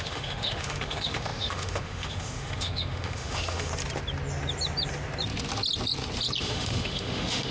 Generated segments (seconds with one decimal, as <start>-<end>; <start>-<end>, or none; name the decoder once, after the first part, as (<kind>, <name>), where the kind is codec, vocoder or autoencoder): 0.0-3.7 (autoencoder, DAC-VAE); 6.4-7.5